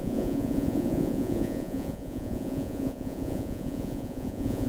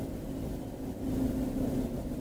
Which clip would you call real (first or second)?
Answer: second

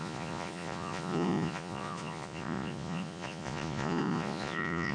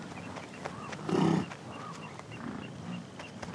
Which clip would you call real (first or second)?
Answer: second